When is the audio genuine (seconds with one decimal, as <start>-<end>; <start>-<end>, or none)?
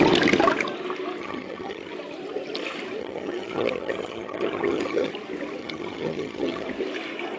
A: 0.0-1.2; 1.9-3.0; 5.1-5.6; 6.7-7.4